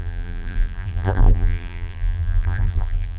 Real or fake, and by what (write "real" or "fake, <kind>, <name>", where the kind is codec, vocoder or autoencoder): fake, vocoder, BigVGAN v2